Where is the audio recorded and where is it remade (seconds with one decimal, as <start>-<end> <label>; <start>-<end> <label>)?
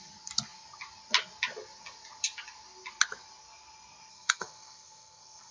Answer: 0.0-4.1 recorded; 4.1-5.5 remade